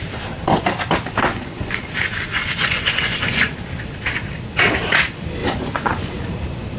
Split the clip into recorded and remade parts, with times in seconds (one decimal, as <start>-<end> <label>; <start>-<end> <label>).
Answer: 0.0-1.3 recorded; 1.3-3.6 remade; 3.6-5.4 recorded; 5.4-6.1 remade; 6.1-6.8 recorded